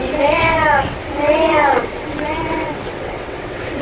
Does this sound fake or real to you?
fake